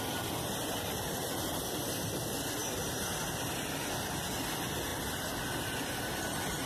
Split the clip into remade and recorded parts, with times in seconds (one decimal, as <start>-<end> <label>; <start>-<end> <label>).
0.0-6.7 recorded